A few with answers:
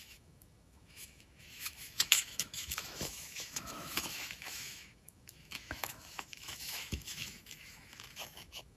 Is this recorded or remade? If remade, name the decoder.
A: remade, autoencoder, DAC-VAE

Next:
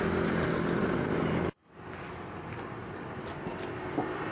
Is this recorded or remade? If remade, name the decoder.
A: recorded